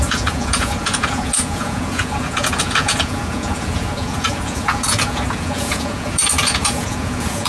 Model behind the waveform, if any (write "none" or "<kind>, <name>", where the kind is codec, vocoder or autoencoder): vocoder, Vocos